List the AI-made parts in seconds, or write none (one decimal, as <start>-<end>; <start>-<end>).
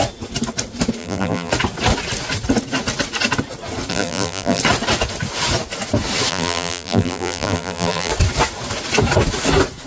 1.0-1.5; 3.9-4.6; 6.3-8.1